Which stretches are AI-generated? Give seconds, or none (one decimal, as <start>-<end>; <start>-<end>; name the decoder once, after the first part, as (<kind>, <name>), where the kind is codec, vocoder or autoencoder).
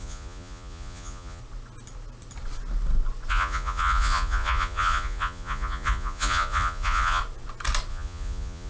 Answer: 0.0-1.4 (vocoder, Vocos); 3.3-7.2; 7.9-8.7